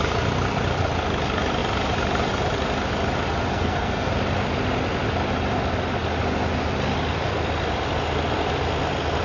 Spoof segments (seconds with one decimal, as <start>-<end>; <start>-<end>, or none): 3.5-4.1